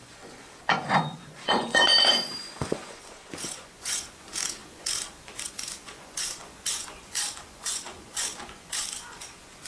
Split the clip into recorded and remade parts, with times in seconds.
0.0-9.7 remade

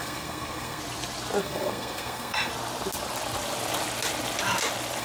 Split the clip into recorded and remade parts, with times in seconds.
0.0-0.8 remade; 0.8-1.4 recorded; 1.4-2.5 remade; 2.5-5.0 recorded

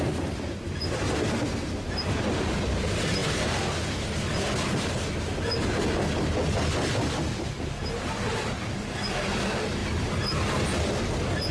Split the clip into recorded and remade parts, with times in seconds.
0.0-11.5 recorded

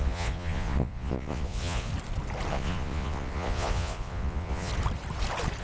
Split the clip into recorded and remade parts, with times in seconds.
0.0-1.9 remade; 1.9-2.5 recorded; 2.5-4.7 remade; 4.7-5.6 recorded

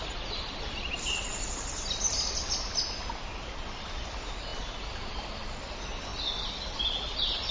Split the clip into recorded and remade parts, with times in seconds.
0.0-7.5 recorded

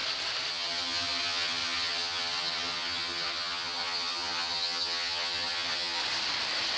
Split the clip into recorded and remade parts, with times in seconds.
0.0-0.5 recorded; 0.5-6.0 remade; 6.0-6.8 recorded